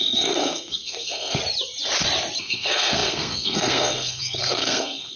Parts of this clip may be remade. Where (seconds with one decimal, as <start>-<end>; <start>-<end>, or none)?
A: 0.0-1.4; 2.4-5.2